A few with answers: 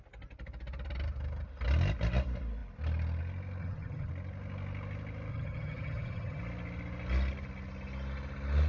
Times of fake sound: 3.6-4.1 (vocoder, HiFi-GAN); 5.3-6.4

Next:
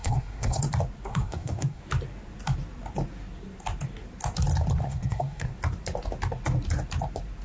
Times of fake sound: 0.0-0.6 (codec, SNAC); 1.1-1.8; 4.8-5.5

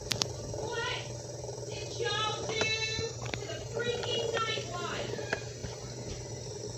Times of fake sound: 0.0-6.8 (vocoder, BigVGAN v2)